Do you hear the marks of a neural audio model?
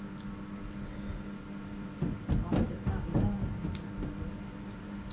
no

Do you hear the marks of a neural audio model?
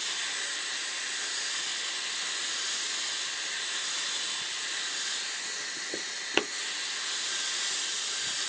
no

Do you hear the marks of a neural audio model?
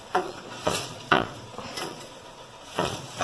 yes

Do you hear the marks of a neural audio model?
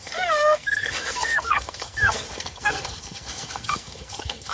yes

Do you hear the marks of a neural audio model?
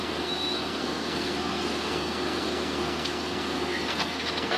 yes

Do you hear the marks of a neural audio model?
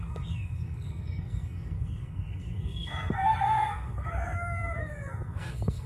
yes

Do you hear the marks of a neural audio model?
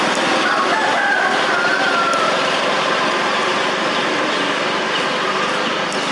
no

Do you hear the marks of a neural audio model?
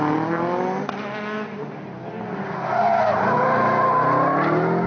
no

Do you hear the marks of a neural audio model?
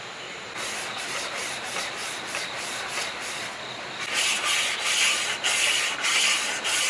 no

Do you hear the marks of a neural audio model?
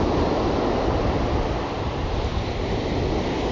no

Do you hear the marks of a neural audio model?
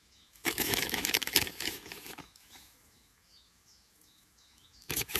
yes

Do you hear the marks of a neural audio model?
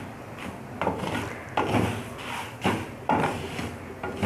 no